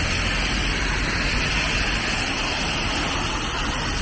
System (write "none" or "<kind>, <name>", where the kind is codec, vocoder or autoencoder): none